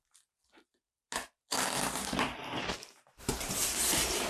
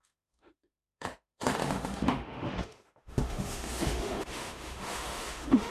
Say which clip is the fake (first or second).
second